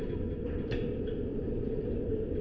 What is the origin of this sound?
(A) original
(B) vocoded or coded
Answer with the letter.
A